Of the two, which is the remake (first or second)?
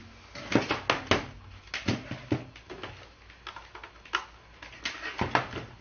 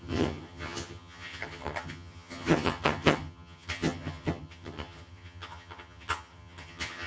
second